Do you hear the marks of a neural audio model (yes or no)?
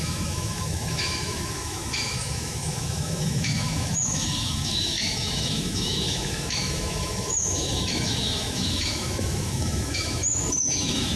yes